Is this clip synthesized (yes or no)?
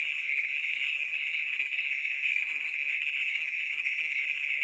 yes